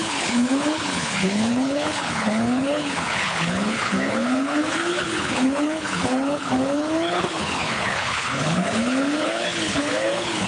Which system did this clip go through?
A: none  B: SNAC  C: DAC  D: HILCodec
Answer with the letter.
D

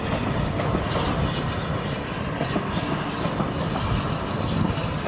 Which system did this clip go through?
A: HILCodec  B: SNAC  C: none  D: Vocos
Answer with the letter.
C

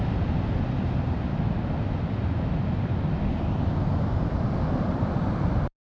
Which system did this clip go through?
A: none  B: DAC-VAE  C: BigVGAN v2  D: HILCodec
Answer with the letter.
A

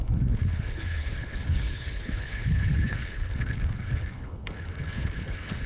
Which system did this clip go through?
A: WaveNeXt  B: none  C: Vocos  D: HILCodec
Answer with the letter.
D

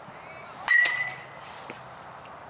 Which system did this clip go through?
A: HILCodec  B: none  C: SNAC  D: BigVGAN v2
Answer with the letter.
B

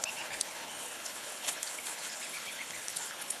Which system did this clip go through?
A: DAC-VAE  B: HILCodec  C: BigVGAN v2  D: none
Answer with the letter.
B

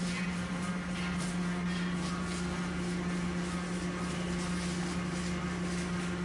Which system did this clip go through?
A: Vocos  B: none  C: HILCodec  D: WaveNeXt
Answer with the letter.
B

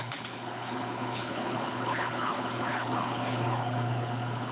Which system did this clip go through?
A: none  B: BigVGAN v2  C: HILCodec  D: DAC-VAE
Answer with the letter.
C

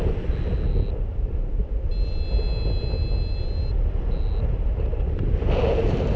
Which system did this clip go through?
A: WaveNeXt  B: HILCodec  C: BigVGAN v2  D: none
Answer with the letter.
D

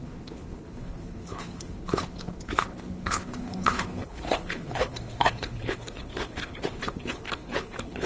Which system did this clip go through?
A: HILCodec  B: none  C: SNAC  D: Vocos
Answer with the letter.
A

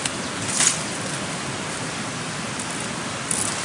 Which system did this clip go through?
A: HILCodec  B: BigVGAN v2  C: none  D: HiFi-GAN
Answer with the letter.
C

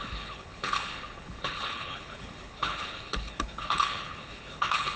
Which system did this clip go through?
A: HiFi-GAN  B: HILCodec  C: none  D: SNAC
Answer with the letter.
B